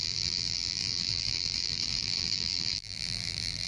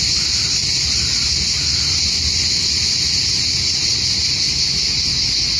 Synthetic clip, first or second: first